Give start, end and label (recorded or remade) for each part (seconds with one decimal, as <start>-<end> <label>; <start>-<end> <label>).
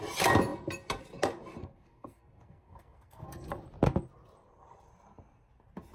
0.0-1.6 recorded; 1.6-3.5 remade; 3.5-5.9 recorded